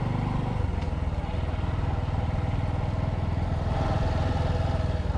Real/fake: real